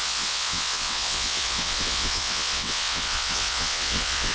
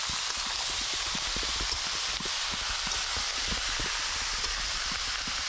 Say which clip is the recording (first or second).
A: second